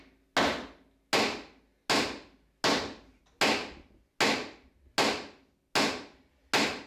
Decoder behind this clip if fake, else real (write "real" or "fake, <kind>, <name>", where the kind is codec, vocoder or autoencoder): real